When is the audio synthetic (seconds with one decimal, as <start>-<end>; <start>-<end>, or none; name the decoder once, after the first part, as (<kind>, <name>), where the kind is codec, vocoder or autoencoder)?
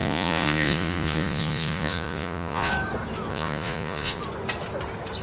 0.0-2.7 (vocoder, Vocos); 3.3-4.2